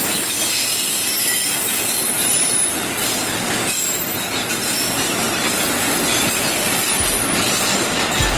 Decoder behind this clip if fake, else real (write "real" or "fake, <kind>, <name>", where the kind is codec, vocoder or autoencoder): real